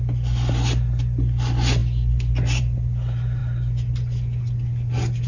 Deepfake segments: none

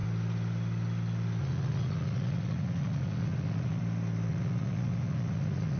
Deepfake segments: 1.4-3.8 (vocoder, Vocos); 4.3-5.8

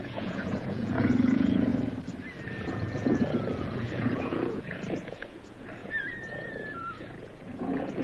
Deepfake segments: 0.0-1.7 (vocoder, Vocos); 2.7-8.0

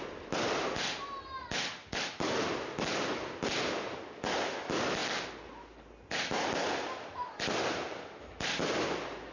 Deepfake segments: none

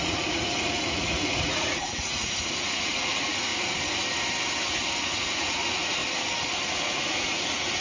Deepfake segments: 0.0-3.5 (vocoder, Vocos); 5.0-6.0; 6.7-7.8